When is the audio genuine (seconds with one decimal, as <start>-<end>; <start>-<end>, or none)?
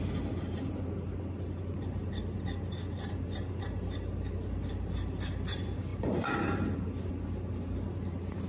0.0-8.5